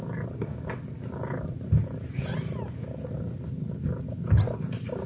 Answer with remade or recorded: recorded